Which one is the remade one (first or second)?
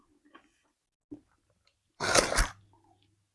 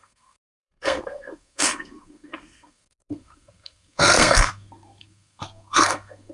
second